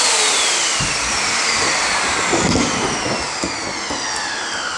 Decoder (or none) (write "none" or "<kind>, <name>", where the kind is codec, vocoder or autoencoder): none